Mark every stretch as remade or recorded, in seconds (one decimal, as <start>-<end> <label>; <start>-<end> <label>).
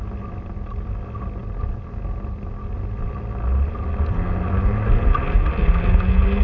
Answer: 0.0-6.4 recorded